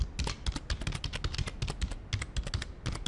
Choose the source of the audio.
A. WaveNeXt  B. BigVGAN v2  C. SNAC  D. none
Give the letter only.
D